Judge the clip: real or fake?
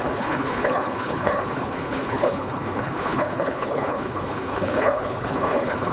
fake